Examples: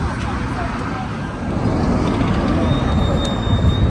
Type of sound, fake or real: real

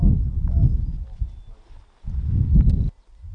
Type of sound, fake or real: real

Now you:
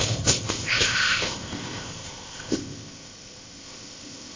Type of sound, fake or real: fake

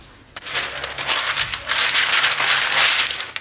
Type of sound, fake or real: real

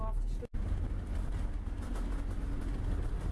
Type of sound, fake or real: real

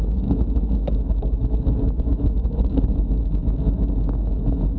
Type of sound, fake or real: fake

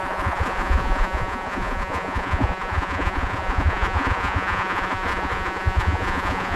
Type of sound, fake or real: fake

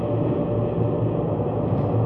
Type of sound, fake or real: real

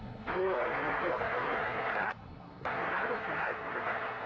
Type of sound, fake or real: fake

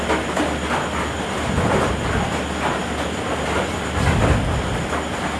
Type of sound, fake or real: real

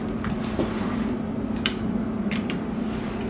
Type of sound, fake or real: real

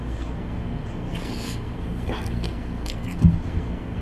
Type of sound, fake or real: fake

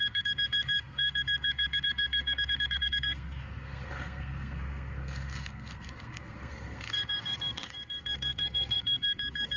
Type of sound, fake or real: fake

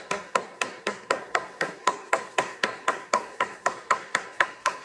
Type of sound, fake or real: fake